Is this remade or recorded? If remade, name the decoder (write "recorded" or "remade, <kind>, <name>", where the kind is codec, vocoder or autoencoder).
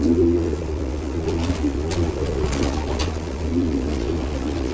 remade, vocoder, Vocos